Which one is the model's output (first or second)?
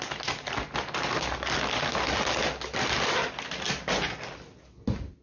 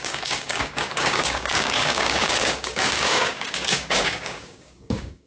second